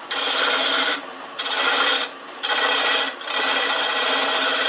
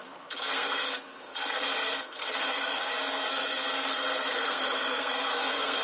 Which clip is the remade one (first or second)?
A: second